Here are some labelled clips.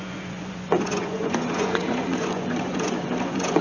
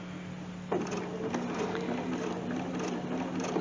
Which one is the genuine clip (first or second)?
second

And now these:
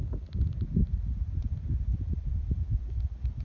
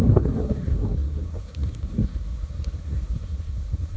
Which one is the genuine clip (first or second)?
first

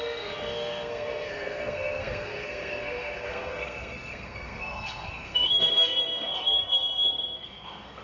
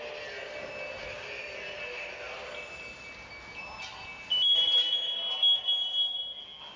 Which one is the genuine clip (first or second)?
second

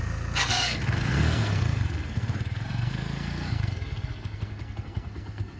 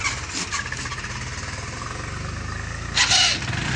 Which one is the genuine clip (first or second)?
second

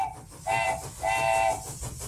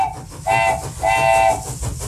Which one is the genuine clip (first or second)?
second